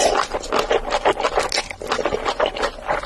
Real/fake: real